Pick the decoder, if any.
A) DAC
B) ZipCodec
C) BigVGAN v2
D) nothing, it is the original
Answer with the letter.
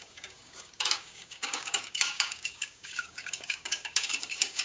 A